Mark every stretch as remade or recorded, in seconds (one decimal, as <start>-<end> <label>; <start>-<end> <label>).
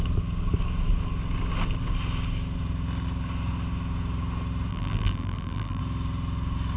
0.0-4.7 recorded; 4.7-5.8 remade; 5.8-6.8 recorded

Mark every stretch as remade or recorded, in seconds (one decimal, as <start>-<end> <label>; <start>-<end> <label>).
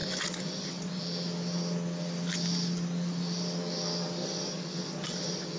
0.0-1.0 remade; 1.0-4.2 recorded; 4.2-5.6 remade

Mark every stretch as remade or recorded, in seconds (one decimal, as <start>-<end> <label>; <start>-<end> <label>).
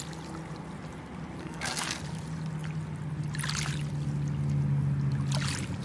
0.0-1.4 recorded; 1.4-2.0 remade; 2.0-5.8 recorded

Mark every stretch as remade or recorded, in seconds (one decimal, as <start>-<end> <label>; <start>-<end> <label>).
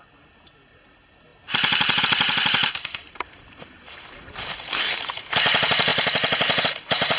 0.0-7.2 remade